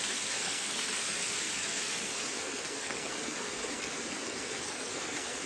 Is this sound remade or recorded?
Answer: remade